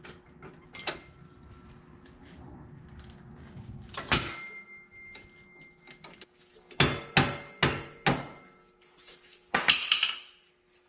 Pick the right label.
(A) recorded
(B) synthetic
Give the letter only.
A